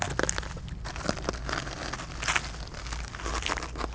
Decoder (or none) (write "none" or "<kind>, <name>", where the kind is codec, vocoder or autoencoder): none